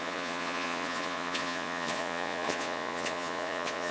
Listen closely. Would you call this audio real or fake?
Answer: fake